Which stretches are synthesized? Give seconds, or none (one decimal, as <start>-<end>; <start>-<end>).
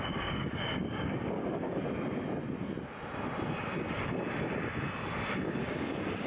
0.0-1.8; 5.6-6.3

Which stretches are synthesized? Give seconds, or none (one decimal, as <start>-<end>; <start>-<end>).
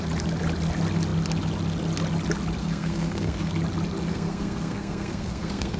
2.6-3.5; 4.1-5.8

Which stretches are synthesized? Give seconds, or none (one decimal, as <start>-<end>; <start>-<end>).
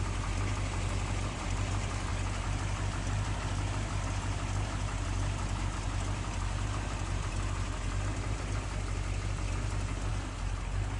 none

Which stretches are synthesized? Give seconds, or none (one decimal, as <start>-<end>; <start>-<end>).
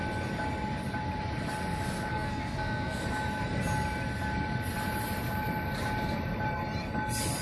2.1-3.0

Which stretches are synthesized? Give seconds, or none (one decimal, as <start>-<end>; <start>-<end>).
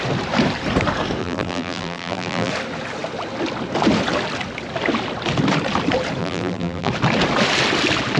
1.2-2.5; 6.2-6.9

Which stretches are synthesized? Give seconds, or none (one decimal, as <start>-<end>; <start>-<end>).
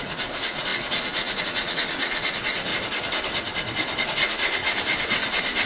0.0-2.7; 4.0-4.6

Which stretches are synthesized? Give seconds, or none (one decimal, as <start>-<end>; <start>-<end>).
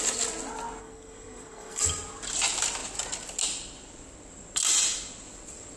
0.8-1.8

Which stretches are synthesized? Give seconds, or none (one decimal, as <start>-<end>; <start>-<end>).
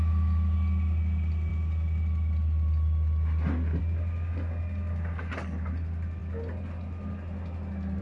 none